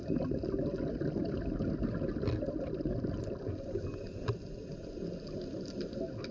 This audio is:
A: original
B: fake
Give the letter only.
A